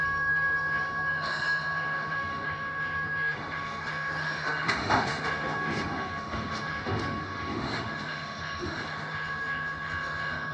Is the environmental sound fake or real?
fake